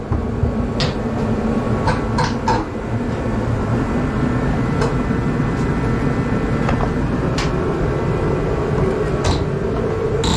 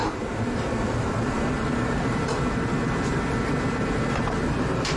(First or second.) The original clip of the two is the first